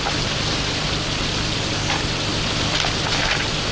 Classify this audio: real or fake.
real